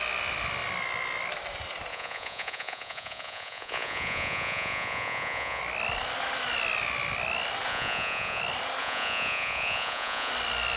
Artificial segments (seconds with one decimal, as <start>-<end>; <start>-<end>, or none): 1.9-5.6; 7.7-8.4; 8.8-10.3